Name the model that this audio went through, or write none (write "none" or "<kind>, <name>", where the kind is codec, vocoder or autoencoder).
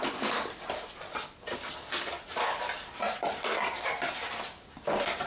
none